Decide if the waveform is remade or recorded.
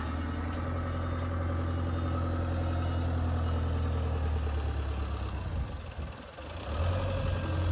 recorded